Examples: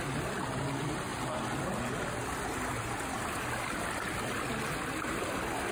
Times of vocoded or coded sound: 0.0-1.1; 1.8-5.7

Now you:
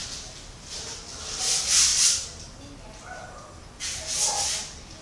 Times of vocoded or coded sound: none